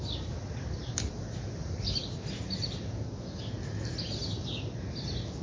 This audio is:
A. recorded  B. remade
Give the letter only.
A